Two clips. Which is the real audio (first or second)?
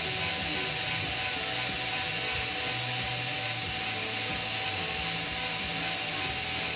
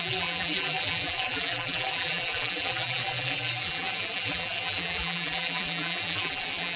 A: first